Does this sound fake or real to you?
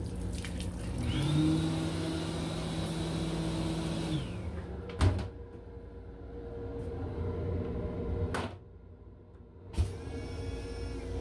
real